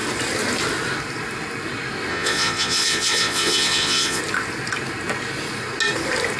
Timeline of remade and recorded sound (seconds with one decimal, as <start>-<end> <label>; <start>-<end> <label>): 0.0-2.1 recorded; 2.1-4.2 remade; 4.2-6.4 recorded